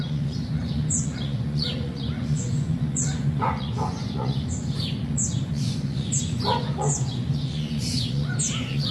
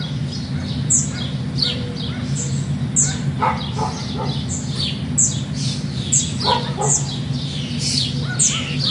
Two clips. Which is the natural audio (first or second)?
second